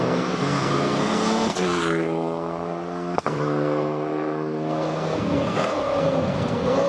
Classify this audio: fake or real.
fake